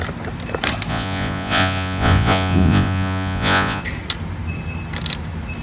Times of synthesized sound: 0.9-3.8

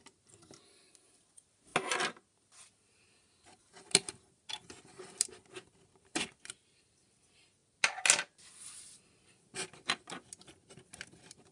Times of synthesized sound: none

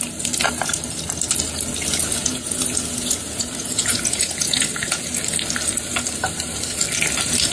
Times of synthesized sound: 2.0-5.2

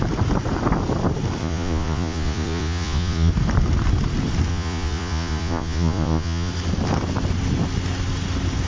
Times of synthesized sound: 1.4-3.3; 4.5-6.5

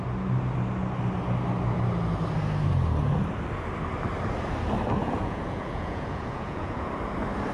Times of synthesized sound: 5.0-6.9

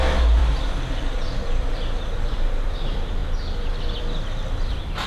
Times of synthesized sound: none

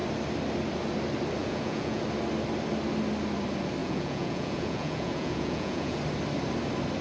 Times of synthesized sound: 1.4-2.0; 3.8-6.0

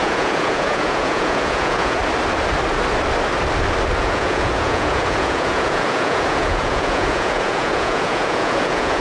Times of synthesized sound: 0.0-2.0; 4.0-9.0